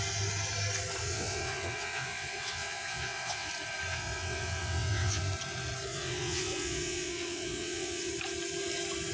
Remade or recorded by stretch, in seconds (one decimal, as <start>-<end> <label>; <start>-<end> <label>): 0.0-1.0 recorded; 1.0-3.5 remade; 3.5-3.9 recorded; 3.9-5.2 remade; 5.2-5.9 recorded; 5.9-8.1 remade; 8.1-9.1 recorded